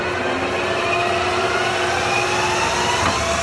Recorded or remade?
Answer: recorded